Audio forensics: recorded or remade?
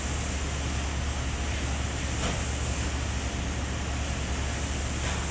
recorded